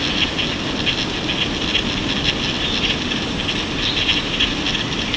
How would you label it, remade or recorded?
recorded